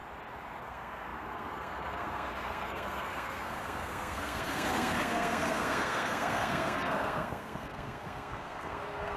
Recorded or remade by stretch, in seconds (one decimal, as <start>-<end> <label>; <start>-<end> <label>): 0.0-0.6 recorded; 0.6-9.2 remade